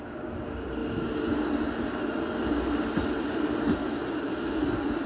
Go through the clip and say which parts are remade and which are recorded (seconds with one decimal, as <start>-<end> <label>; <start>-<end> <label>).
0.0-5.1 recorded

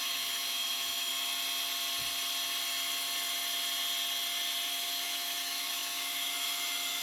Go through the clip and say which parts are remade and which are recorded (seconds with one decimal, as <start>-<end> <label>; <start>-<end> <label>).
0.0-1.1 remade; 1.1-4.7 recorded; 4.7-7.0 remade

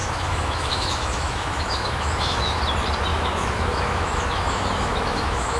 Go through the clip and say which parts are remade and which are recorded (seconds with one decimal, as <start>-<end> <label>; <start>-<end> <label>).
0.0-2.6 remade; 2.6-3.1 recorded; 3.1-5.6 remade

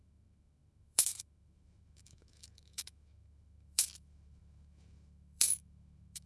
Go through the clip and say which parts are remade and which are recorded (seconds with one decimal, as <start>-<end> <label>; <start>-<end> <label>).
0.0-6.3 remade